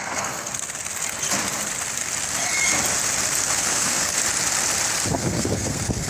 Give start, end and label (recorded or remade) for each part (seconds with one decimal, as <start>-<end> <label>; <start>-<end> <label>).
0.0-0.5 remade; 0.5-3.6 recorded; 3.6-4.1 remade; 4.1-5.1 recorded; 5.1-6.1 remade